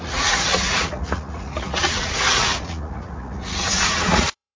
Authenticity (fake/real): fake